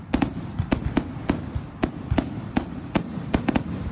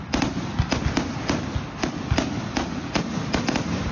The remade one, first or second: first